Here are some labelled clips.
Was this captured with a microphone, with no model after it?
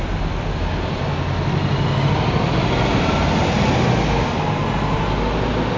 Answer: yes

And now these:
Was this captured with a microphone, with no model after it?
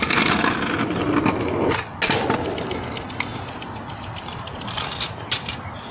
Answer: yes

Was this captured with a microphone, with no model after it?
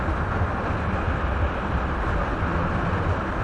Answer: yes